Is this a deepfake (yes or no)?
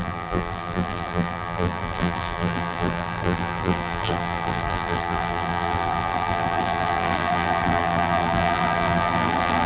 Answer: yes